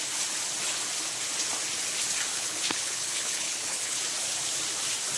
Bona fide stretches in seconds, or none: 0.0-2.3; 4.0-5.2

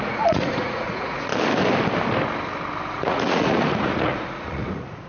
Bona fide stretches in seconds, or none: 1.3-2.9

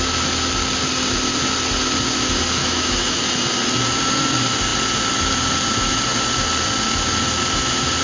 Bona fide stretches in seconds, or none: 0.0-2.6; 3.2-8.0

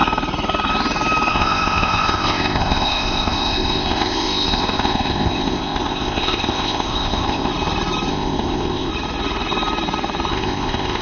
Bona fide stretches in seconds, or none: 0.0-1.3; 7.5-8.1; 8.9-10.3

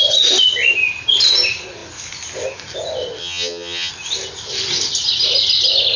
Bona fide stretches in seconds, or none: 0.0-3.2; 3.9-6.0

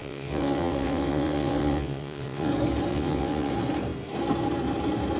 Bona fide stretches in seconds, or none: 2.5-2.9; 3.5-5.2

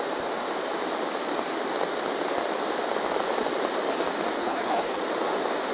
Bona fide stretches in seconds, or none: 0.0-4.4; 5.0-5.7